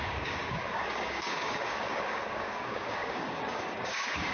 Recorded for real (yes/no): no